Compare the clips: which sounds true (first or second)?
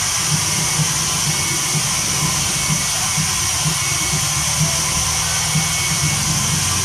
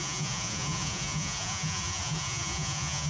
first